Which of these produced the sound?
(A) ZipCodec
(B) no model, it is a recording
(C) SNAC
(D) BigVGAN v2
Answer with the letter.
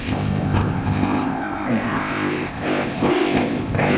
A